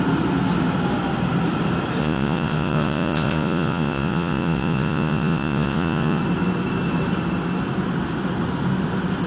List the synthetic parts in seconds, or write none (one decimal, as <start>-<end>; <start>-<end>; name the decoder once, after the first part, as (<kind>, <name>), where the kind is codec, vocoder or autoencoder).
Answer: 2.0-6.2 (vocoder, Vocos)